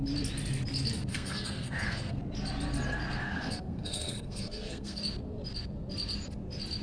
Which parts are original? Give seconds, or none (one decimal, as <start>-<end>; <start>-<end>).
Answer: 0.0-1.1; 2.2-3.1; 5.0-6.8